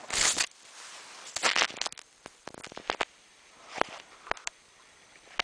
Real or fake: real